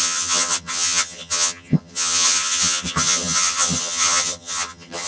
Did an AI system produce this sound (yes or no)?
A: yes